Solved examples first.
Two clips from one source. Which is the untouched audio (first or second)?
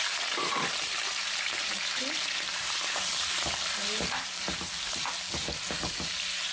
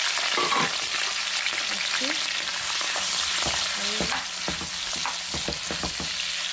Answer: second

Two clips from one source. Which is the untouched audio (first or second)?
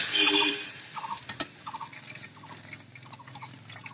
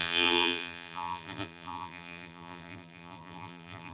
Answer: first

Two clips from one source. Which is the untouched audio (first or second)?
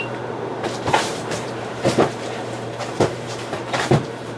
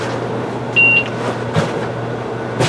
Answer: second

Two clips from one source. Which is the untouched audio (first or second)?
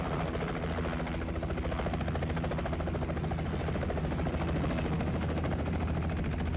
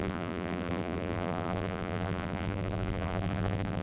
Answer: first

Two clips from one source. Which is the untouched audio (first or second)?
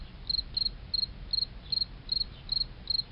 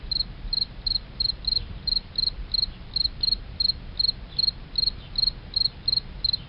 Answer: first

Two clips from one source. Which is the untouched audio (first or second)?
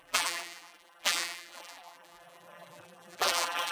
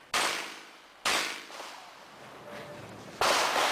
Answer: second